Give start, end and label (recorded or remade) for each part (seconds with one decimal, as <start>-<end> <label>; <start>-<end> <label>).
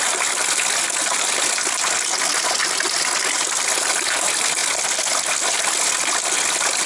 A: 0.0-6.9 recorded